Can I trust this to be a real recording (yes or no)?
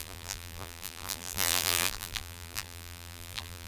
no